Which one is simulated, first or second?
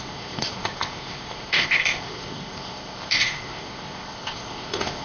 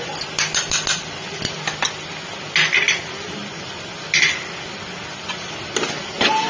first